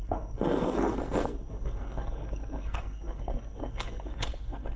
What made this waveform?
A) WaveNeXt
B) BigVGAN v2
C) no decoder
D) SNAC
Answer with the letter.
D